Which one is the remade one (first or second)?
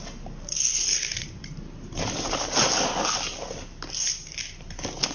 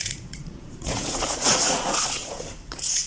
second